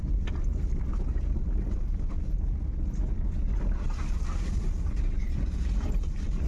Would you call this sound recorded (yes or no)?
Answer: yes